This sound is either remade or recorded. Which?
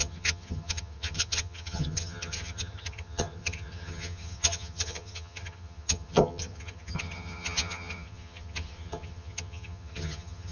remade